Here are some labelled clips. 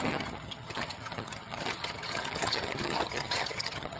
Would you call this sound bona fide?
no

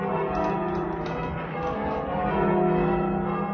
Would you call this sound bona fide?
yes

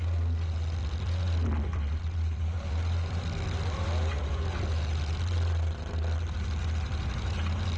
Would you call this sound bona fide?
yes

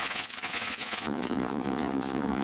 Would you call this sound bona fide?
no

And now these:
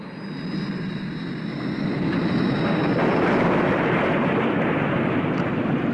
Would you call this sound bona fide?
yes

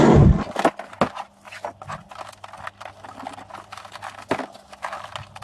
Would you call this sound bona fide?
yes